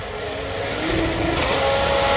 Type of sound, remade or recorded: recorded